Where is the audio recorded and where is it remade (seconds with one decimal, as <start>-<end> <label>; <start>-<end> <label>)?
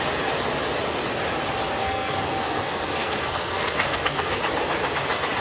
0.0-1.8 recorded; 1.8-4.4 remade; 4.4-5.4 recorded